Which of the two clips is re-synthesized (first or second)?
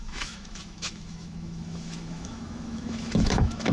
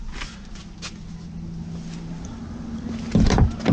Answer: first